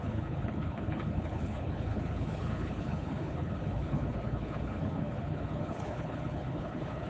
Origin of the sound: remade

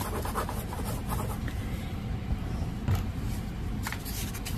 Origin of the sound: recorded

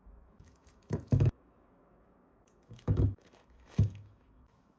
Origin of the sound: remade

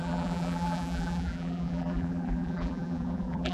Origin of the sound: remade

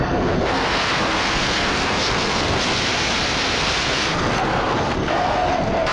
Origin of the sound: remade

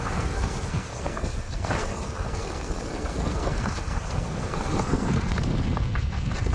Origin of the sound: remade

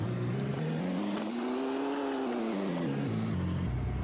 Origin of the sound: recorded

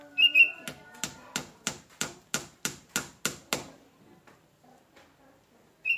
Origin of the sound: recorded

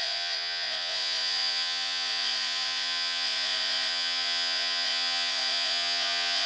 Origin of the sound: remade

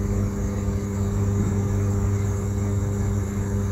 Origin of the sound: remade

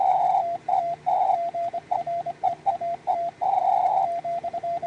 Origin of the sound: recorded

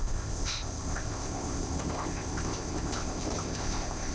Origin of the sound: remade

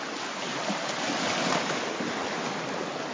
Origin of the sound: recorded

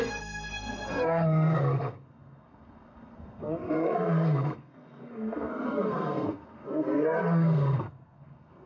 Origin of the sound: remade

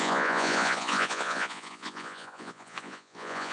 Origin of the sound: remade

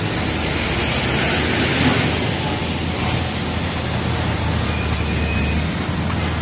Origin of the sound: recorded